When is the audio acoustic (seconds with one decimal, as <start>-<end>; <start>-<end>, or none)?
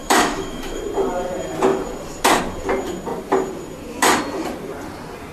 0.8-5.3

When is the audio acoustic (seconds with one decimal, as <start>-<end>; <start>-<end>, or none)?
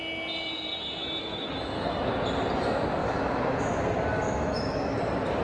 0.0-1.2; 2.1-3.0; 3.6-4.1; 5.0-5.4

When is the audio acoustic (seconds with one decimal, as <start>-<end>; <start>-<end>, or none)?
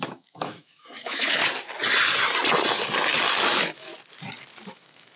1.4-3.4; 3.9-4.7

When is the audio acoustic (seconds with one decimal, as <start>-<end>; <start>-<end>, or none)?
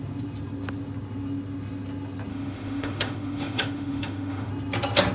0.0-2.3; 4.5-5.1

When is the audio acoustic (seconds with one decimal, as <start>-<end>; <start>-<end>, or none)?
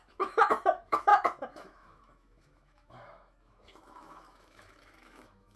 none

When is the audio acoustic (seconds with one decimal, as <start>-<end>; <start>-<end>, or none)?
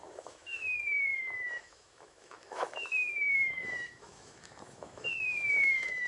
none